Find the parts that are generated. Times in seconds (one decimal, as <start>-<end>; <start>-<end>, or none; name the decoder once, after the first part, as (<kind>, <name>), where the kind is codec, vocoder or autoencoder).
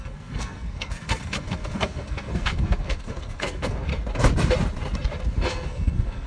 0.0-3.9 (codec, SNAC); 5.5-6.3